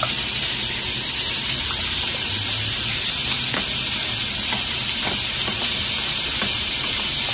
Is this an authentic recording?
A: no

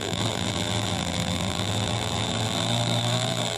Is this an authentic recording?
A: no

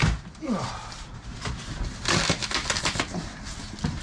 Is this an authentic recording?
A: yes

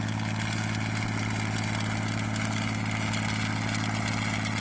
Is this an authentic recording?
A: yes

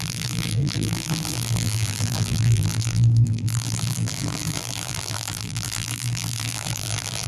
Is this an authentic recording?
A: no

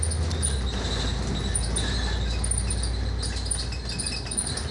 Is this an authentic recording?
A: yes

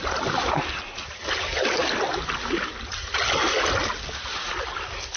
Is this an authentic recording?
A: yes